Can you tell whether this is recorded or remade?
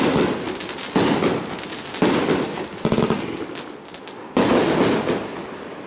recorded